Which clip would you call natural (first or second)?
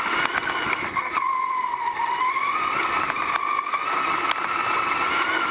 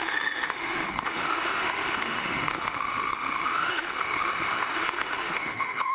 first